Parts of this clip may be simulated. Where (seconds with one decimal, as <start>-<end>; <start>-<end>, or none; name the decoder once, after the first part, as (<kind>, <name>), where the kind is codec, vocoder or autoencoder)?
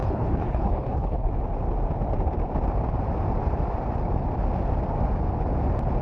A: 0.0-1.3 (codec, HILCodec)